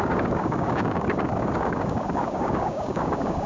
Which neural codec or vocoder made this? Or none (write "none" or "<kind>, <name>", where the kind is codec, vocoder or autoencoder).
codec, DAC